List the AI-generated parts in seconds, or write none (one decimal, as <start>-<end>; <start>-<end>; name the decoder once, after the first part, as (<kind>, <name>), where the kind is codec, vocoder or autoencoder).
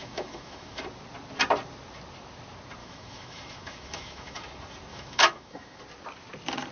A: 0.0-0.8 (autoencoder, DAC-VAE); 2.8-4.4; 4.9-5.8